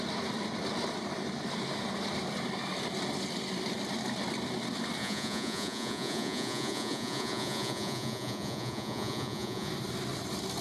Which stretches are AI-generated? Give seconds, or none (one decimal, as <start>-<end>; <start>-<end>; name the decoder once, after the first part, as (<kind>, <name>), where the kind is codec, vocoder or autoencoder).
5.0-9.7 (vocoder, Vocos)